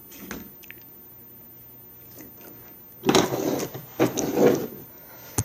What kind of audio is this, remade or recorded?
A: recorded